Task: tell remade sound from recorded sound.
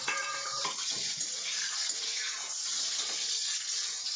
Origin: remade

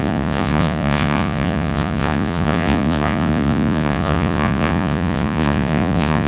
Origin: remade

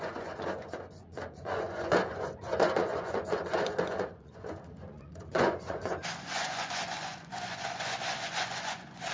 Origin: remade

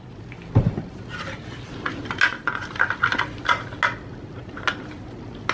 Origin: recorded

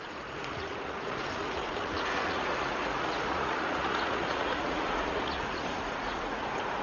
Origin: remade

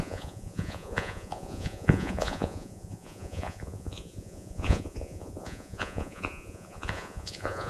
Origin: remade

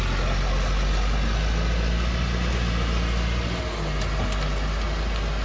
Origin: recorded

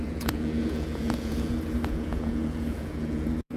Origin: remade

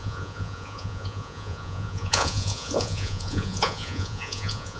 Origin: remade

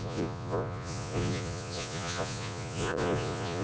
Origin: remade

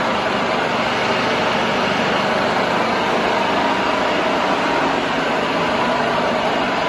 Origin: recorded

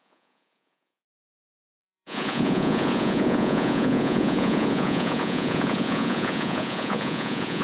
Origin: remade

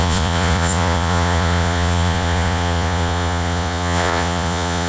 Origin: remade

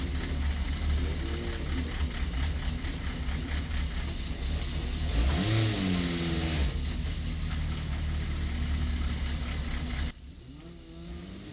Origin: recorded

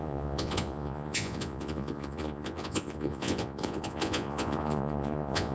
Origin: remade